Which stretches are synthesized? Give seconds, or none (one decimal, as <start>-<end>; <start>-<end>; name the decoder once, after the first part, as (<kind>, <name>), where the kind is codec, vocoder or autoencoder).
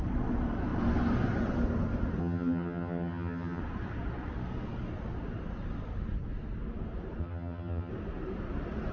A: 2.2-3.6 (vocoder, HiFi-GAN); 7.2-7.9